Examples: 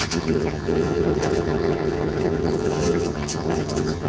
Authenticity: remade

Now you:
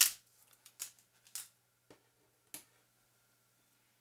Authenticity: recorded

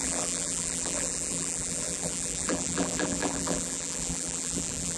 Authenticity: remade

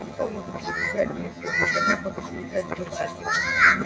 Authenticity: remade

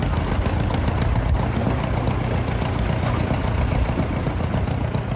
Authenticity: recorded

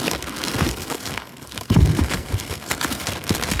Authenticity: remade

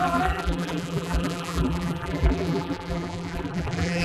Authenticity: remade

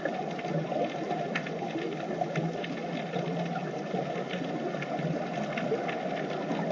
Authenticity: recorded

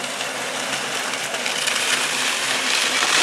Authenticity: recorded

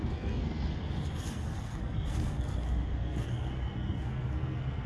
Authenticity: remade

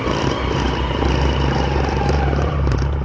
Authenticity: remade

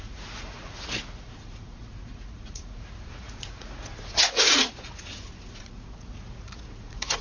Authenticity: remade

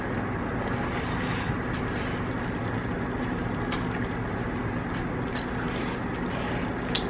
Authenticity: recorded